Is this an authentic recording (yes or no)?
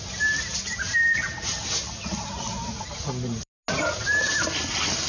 yes